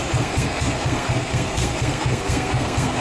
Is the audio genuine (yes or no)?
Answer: no